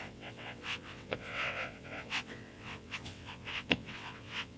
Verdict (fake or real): fake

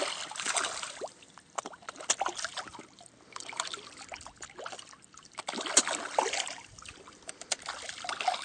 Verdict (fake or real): real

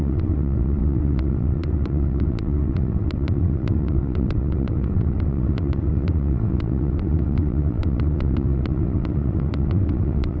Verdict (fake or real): fake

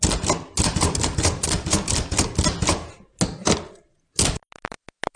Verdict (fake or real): real